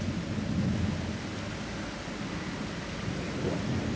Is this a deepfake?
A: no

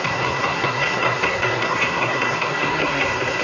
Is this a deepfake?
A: yes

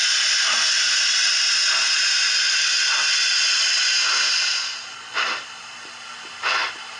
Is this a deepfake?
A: no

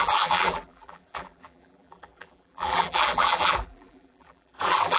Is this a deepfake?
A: yes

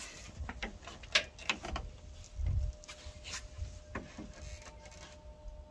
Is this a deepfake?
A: no